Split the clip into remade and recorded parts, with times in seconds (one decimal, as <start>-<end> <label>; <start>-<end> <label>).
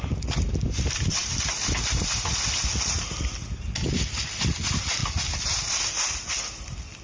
0.0-7.0 recorded